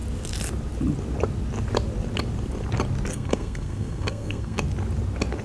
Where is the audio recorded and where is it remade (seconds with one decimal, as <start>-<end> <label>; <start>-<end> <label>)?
0.0-3.1 recorded; 3.1-4.6 remade; 4.6-5.4 recorded